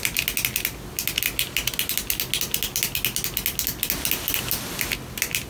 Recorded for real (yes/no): yes